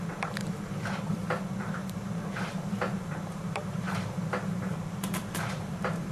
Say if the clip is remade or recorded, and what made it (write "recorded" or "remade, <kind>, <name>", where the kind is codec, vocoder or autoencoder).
remade, vocoder, BigVGAN v2